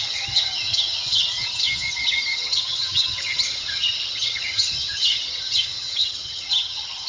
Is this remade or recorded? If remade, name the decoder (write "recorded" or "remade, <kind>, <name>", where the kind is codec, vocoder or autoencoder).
remade, vocoder, HiFi-GAN